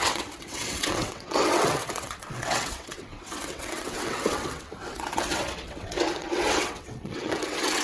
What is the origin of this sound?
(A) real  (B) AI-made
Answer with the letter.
B